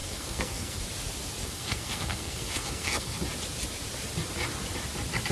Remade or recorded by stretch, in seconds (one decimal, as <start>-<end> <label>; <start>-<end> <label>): 0.0-0.8 remade; 0.8-1.4 recorded; 1.4-3.2 remade; 3.2-5.3 recorded

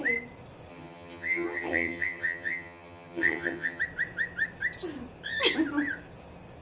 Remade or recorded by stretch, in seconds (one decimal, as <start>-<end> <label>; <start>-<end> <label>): 0.0-0.7 recorded; 0.7-3.8 remade; 3.8-6.6 recorded

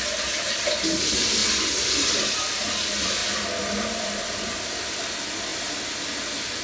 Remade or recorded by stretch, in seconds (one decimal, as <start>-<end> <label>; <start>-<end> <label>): 0.0-6.6 recorded

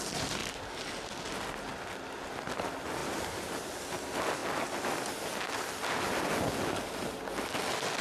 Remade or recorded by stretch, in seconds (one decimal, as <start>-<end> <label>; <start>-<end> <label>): 0.0-0.4 recorded; 0.4-1.6 remade; 1.6-3.0 recorded; 3.0-3.9 remade; 3.9-8.0 recorded